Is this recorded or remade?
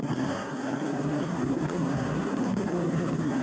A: remade